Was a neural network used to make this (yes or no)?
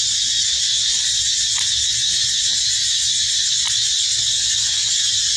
no